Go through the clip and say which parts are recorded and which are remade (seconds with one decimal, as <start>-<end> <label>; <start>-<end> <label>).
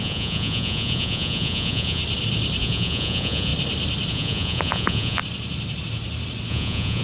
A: 0.0-2.0 remade; 2.0-2.6 recorded; 2.6-3.5 remade; 3.5-4.1 recorded; 4.1-5.2 remade; 5.2-6.5 recorded; 6.5-7.0 remade